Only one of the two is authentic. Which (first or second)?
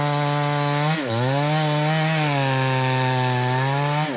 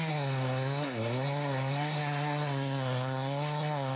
first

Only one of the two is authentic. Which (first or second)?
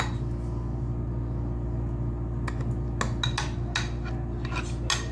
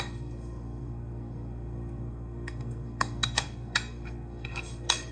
first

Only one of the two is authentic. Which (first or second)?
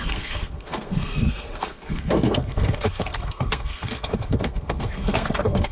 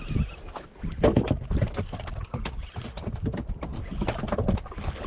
second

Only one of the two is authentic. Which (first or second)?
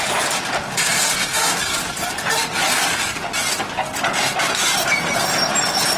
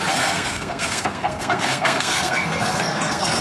first